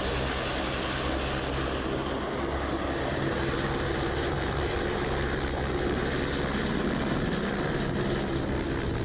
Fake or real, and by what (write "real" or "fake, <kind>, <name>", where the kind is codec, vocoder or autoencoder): real